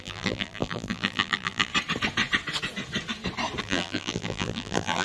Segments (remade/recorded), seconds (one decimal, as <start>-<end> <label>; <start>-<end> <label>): 0.0-1.7 remade; 1.7-3.6 recorded; 3.6-5.0 remade

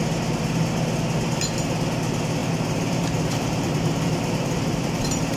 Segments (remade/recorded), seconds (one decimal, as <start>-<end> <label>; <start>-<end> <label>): 0.0-2.4 recorded; 2.4-5.4 remade